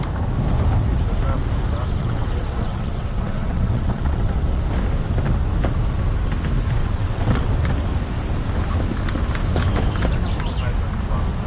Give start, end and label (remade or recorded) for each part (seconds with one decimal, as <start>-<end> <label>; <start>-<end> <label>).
0.0-2.0 recorded; 2.0-4.6 remade; 4.6-6.8 recorded; 6.8-7.5 remade; 7.5-11.5 recorded